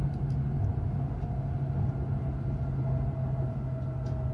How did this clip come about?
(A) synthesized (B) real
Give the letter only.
B